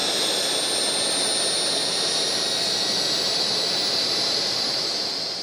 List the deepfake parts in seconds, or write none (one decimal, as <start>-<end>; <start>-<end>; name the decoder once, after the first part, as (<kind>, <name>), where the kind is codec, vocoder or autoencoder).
none